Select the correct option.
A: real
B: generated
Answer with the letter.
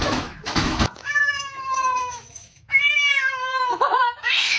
B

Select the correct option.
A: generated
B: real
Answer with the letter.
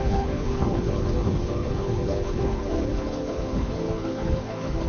A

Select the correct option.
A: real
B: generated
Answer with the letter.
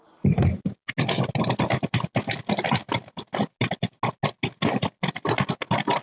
A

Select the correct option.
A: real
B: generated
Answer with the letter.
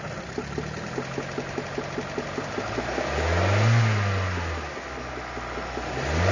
A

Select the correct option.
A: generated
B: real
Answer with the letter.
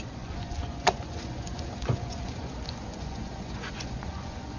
A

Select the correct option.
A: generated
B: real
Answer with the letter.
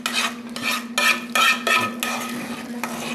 B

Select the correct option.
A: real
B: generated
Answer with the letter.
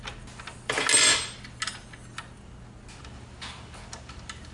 A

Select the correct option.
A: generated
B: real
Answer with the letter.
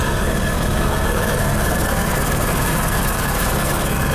A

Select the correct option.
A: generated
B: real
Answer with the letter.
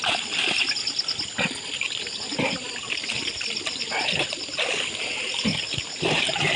B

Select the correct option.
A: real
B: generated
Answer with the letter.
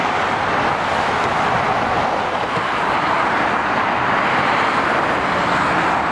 A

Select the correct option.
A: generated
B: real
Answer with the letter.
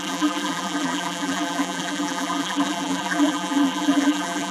A